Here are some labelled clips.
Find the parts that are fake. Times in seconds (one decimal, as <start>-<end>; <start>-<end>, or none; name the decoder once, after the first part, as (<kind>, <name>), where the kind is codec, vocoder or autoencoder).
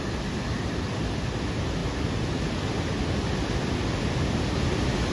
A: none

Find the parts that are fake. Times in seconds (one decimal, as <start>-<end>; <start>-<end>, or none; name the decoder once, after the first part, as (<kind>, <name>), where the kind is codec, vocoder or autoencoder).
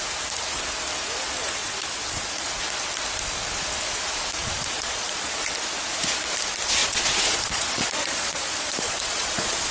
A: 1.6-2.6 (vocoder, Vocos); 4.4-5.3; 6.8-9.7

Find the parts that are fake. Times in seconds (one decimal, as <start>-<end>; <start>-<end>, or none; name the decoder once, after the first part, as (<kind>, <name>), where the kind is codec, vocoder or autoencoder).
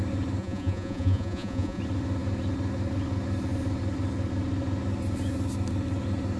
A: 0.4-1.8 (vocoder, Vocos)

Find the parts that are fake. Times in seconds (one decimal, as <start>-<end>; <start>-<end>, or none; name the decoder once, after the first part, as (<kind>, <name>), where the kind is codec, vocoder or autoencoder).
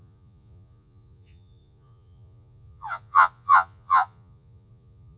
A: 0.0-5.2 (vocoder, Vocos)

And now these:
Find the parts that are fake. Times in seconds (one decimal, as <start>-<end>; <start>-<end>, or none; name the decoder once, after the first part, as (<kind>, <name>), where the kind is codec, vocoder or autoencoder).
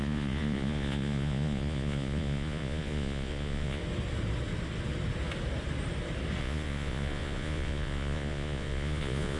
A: 0.0-3.8 (vocoder, Vocos); 6.4-9.4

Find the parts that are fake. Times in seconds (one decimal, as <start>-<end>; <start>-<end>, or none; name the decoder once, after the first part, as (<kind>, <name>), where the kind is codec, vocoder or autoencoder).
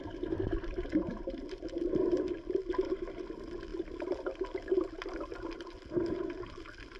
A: none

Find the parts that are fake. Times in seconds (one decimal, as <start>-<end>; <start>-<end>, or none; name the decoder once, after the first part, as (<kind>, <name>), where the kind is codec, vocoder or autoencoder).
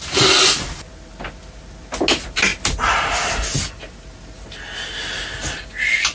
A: none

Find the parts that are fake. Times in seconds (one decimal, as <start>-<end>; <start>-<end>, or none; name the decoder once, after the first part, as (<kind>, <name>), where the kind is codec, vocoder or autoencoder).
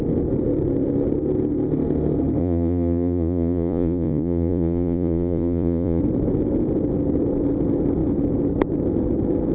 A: 2.4-6.0 (vocoder, Vocos)